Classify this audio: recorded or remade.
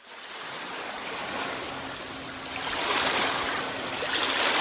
recorded